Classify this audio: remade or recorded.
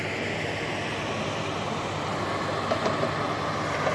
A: recorded